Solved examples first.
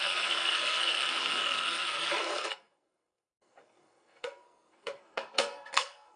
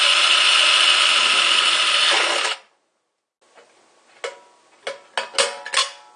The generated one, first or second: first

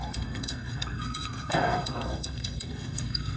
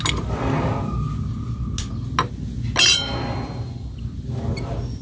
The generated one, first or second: first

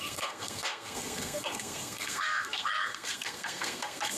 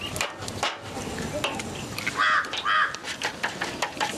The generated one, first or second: first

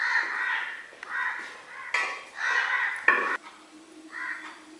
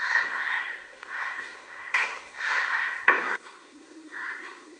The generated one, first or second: second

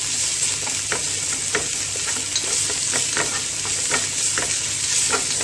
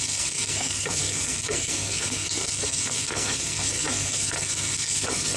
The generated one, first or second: second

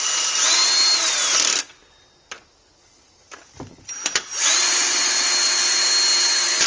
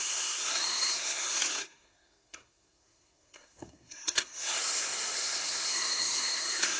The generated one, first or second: second